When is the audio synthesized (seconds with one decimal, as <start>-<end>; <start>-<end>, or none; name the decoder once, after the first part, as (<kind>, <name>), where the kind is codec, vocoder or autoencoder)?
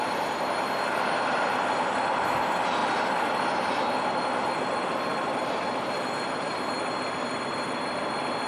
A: none